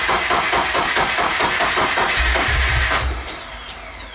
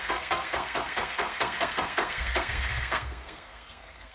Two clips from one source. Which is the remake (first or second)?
second